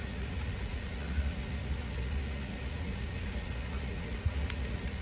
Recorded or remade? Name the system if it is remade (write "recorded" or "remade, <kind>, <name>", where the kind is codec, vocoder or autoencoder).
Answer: remade, vocoder, Vocos